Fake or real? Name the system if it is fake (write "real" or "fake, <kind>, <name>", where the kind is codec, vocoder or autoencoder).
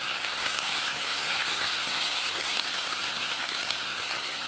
fake, codec, SNAC